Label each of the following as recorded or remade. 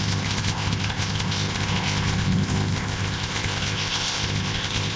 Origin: remade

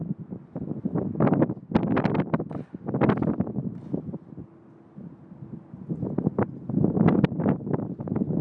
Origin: recorded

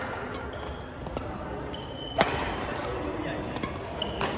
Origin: recorded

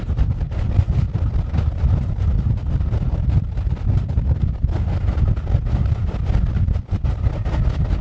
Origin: recorded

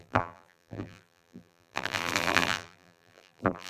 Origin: remade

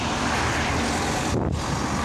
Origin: recorded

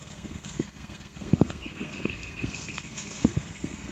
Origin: remade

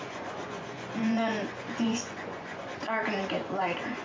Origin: remade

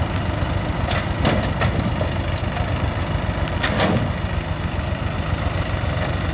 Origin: recorded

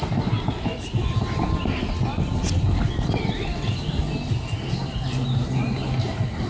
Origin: recorded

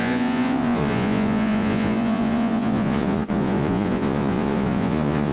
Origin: remade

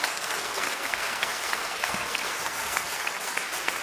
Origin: remade